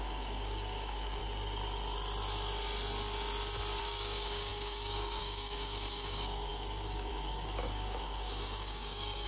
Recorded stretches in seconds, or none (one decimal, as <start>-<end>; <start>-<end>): 1.2-3.8